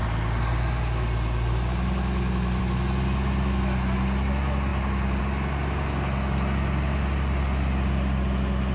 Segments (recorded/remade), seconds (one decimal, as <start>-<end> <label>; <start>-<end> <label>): 0.0-8.7 recorded